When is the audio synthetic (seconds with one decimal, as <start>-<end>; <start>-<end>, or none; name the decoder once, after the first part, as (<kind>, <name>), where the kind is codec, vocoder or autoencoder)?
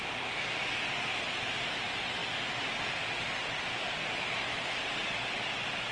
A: none